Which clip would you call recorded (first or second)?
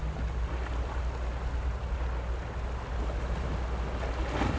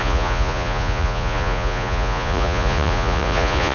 first